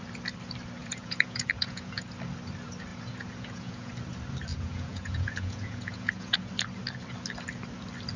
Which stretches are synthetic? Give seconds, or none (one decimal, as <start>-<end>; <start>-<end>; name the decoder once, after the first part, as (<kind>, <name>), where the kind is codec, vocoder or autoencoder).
0.8-2.1 (vocoder, Vocos); 2.9-3.9; 4.5-6.5